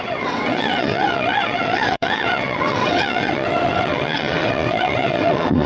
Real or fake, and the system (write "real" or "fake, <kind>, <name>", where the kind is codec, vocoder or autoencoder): fake, vocoder, WaveNeXt